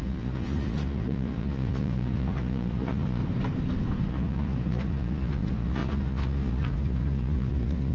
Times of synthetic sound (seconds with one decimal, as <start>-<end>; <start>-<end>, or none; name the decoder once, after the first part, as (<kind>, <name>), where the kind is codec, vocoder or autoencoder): 0.0-3.2 (vocoder, Vocos); 4.1-7.9